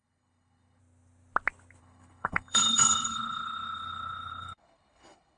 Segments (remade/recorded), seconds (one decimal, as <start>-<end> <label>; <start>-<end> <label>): 0.0-0.8 remade; 0.8-1.8 recorded; 1.8-5.4 remade

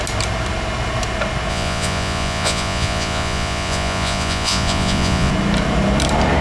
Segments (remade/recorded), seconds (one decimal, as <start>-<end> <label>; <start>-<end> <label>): 0.0-1.5 recorded; 1.5-5.3 remade; 5.3-6.4 recorded

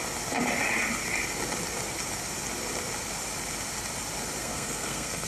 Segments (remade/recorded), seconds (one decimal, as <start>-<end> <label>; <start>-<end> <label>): 0.0-4.4 recorded; 4.4-5.3 remade

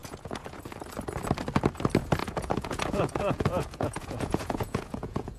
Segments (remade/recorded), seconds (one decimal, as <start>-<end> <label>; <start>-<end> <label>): 0.0-0.6 remade; 0.6-2.2 recorded; 2.2-5.4 remade